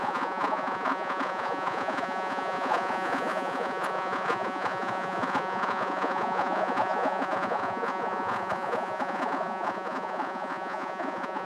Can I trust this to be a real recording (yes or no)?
no